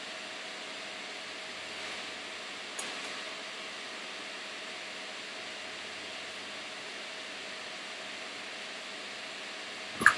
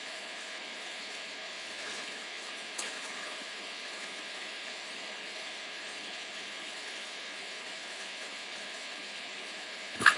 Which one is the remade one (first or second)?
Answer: second